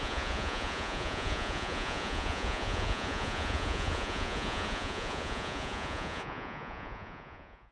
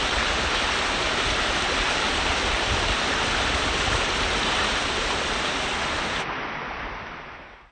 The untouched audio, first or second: second